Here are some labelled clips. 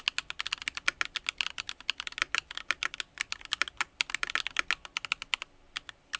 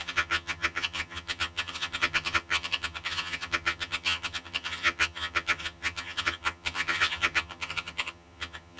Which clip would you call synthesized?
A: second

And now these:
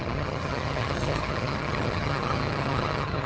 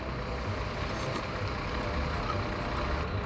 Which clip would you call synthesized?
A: first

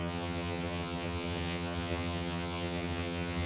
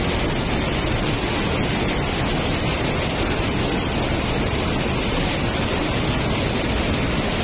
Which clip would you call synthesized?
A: first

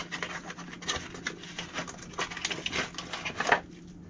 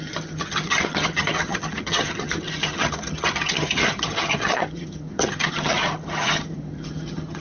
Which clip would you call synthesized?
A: second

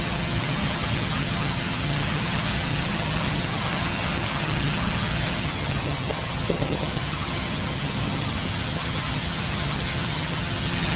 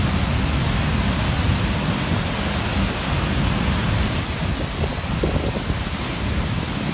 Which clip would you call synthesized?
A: first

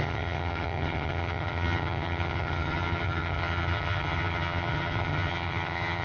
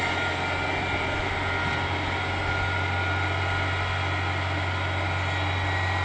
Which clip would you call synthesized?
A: first